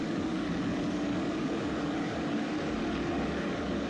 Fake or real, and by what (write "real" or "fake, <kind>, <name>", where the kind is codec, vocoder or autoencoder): fake, codec, DAC